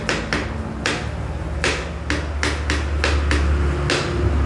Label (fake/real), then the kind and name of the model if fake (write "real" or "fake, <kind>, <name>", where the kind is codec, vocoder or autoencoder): real